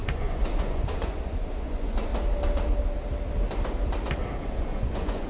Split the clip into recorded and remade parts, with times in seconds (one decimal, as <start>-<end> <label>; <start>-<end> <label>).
0.0-2.1 remade; 2.1-4.5 recorded; 4.5-5.3 remade